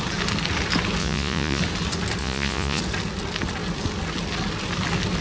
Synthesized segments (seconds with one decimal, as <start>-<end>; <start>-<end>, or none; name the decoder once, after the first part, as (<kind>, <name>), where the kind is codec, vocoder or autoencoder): 1.0-1.6 (vocoder, Vocos); 2.2-2.8